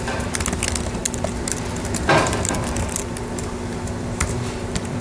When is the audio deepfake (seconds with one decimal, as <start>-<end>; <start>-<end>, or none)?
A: none